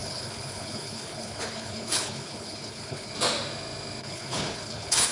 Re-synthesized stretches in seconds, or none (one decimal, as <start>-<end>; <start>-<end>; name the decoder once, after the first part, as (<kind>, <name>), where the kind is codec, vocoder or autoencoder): 0.0-3.1 (codec, HILCodec); 4.0-5.1